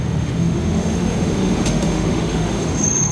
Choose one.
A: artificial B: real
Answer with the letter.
A